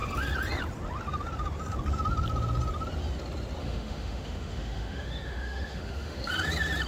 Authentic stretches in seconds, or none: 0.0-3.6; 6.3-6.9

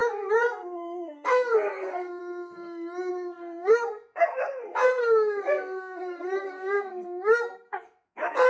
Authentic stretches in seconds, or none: 2.2-3.1

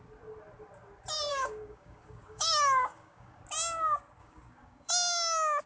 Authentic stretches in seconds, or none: 0.0-1.3; 3.4-4.2; 4.9-5.7